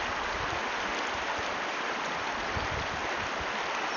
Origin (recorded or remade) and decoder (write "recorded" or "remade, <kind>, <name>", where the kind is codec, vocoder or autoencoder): recorded